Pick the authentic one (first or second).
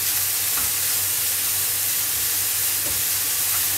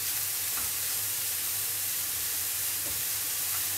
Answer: first